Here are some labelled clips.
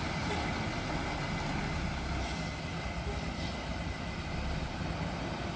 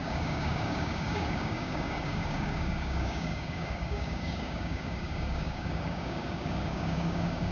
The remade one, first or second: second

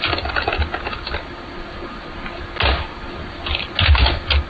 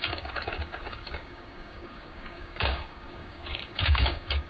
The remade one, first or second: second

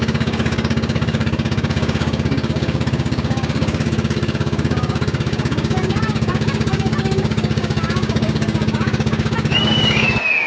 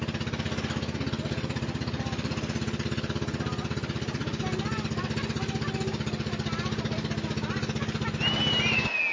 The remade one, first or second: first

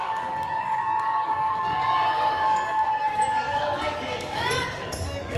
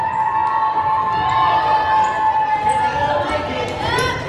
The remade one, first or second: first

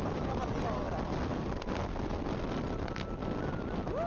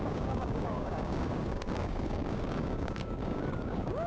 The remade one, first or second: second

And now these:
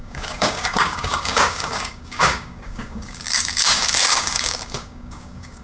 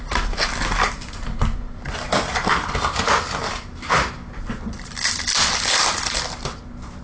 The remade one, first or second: first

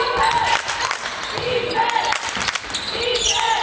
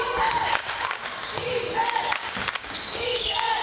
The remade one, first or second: second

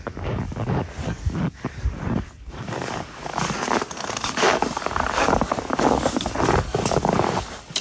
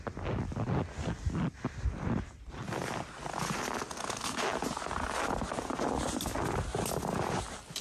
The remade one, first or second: first